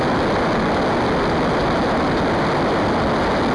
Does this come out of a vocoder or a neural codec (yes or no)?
no